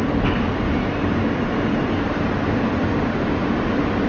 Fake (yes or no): no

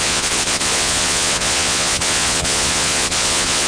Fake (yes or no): yes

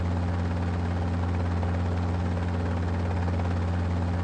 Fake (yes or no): no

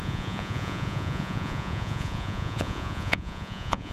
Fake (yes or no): yes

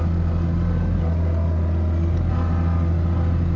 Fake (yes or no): no